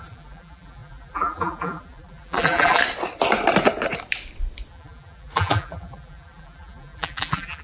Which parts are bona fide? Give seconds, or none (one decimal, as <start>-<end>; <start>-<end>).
2.8-4.7

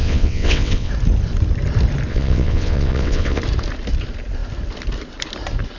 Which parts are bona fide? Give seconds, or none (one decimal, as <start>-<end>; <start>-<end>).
0.9-2.1; 3.4-5.8